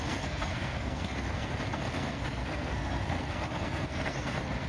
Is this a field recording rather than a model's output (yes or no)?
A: no